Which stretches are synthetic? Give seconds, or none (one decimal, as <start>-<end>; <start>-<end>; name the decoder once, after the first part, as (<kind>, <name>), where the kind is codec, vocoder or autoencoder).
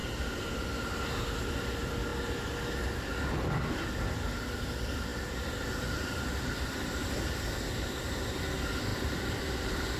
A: 0.0-1.4 (vocoder, BigVGAN v2); 5.1-6.9; 8.9-10.0